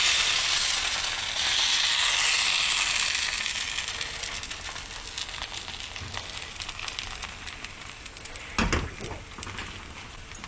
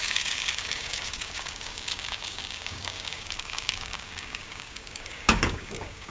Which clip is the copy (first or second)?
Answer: second